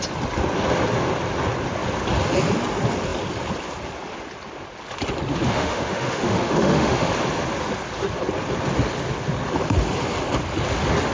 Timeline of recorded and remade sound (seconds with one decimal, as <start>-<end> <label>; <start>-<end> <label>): 0.0-5.3 recorded; 5.3-7.1 remade; 7.1-11.1 recorded